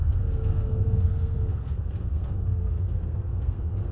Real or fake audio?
fake